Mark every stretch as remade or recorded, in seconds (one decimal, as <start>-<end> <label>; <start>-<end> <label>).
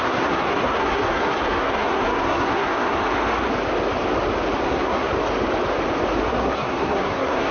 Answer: 0.0-3.0 remade; 3.0-4.6 recorded; 4.6-5.1 remade; 5.1-6.3 recorded; 6.3-7.5 remade